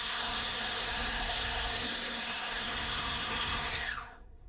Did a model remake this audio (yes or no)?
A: yes